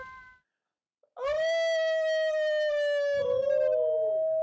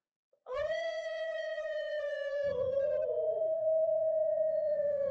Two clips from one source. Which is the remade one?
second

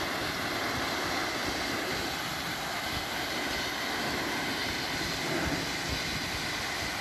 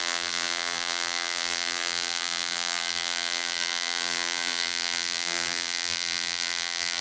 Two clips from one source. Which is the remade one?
second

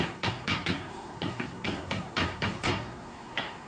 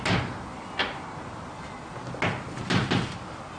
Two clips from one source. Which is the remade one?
first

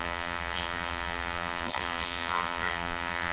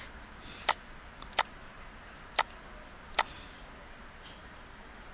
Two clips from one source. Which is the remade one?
first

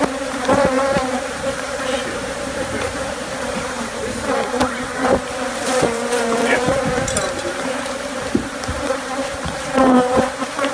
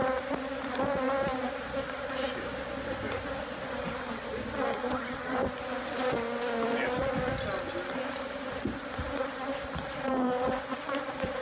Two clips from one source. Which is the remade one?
first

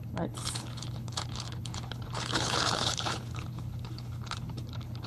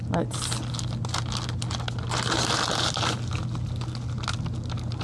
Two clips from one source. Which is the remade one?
first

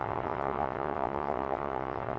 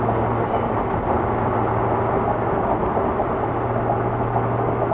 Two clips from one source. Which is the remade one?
first